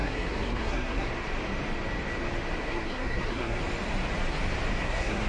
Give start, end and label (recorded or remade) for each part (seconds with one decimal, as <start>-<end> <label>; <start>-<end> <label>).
0.0-1.1 remade; 1.1-2.6 recorded; 2.6-3.6 remade; 3.6-4.8 recorded; 4.8-5.3 remade